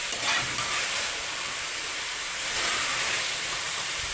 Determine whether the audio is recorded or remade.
remade